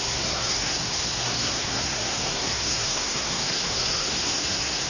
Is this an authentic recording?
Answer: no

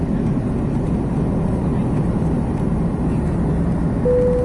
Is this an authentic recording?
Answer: yes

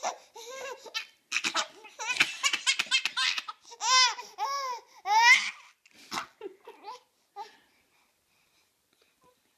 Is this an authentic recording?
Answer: yes